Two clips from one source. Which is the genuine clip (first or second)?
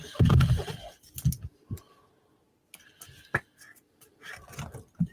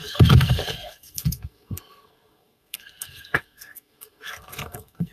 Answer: first